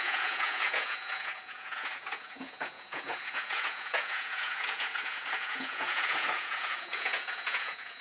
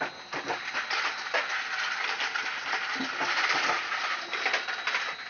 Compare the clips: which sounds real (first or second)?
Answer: second